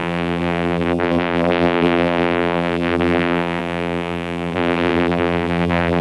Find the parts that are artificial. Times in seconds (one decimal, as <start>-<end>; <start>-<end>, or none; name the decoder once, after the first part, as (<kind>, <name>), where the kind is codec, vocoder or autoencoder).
0.0-6.0 (vocoder, BigVGAN v2)